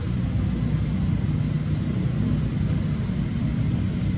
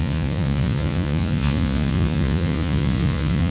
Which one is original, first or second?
first